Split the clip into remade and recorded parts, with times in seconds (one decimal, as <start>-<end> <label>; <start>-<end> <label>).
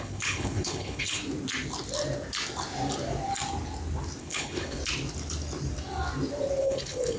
0.0-1.2 remade; 1.2-4.2 recorded; 4.2-4.8 remade; 4.8-6.6 recorded; 6.6-7.2 remade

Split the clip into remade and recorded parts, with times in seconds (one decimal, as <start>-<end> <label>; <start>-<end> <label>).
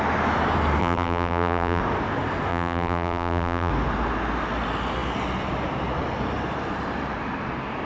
0.0-0.8 recorded; 0.8-1.8 remade; 1.8-2.5 recorded; 2.5-3.7 remade; 3.7-7.9 recorded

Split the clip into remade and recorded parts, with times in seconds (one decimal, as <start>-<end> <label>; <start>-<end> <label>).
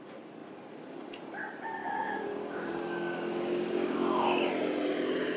0.0-1.8 recorded; 1.8-4.5 remade; 4.5-5.4 recorded